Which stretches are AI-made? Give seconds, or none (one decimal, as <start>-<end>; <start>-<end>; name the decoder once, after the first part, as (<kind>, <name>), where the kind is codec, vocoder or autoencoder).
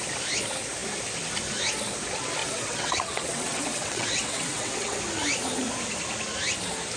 2.4-5.0 (vocoder, WaveNeXt)